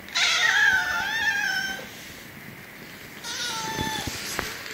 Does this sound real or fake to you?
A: real